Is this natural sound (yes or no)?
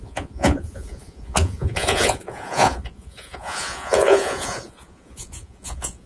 no